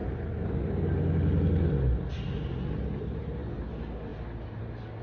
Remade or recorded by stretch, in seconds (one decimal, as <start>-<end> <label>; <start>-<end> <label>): 0.0-5.0 recorded